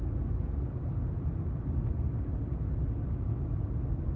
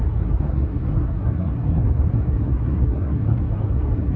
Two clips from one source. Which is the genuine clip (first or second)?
first